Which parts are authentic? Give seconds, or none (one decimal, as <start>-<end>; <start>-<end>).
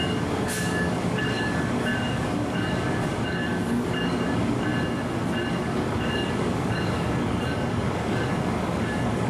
4.7-5.5